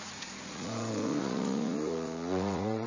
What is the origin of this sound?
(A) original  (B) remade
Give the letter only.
B